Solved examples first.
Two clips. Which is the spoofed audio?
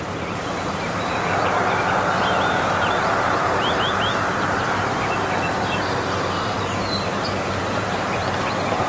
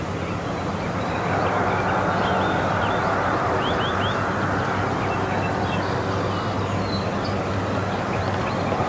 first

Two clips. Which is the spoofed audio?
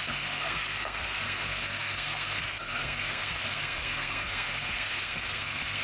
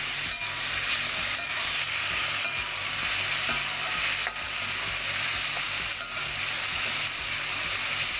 first